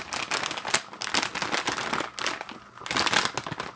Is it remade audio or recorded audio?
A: recorded